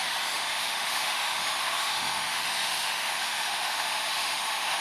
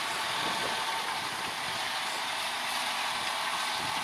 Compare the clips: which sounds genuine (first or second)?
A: second